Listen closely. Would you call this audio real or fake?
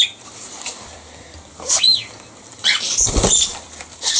fake